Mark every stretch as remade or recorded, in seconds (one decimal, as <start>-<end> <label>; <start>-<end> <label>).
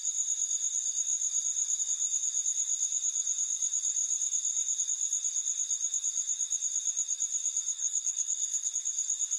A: 0.0-7.8 recorded; 7.8-8.7 remade; 8.7-9.4 recorded